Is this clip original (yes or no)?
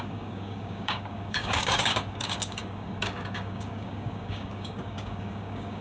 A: no